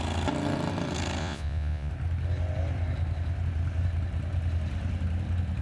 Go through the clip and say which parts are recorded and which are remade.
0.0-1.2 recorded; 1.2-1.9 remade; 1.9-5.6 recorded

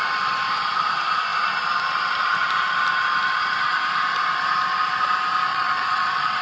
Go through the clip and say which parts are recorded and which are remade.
0.0-5.5 recorded; 5.5-6.4 remade

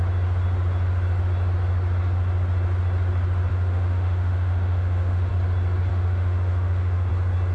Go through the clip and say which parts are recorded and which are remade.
0.0-3.5 recorded; 3.5-5.3 remade; 5.3-5.9 recorded; 5.9-7.1 remade; 7.1-7.5 recorded

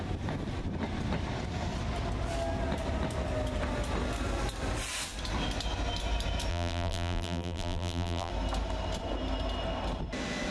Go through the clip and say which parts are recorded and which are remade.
0.0-6.5 recorded; 6.5-8.3 remade; 8.3-10.5 recorded

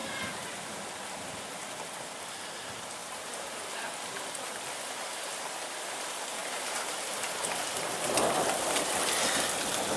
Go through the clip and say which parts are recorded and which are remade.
0.0-0.8 remade; 0.8-3.0 recorded; 3.0-3.7 remade; 3.7-6.4 recorded; 6.4-7.3 remade; 7.3-10.0 recorded

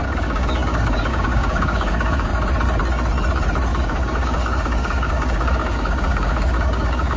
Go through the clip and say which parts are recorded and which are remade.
0.0-2.3 remade; 2.3-3.8 recorded; 3.8-7.2 remade